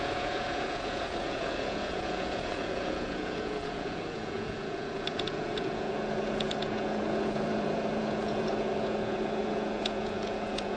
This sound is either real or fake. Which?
fake